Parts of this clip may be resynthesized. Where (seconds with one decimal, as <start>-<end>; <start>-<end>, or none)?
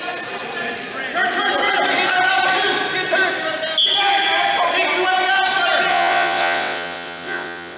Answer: 5.9-7.8